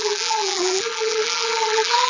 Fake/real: fake